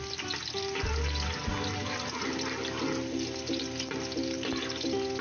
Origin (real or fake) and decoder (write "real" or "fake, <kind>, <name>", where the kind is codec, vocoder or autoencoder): real